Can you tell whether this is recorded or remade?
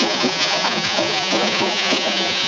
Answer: remade